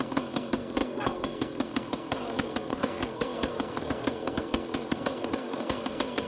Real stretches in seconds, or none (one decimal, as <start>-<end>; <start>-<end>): none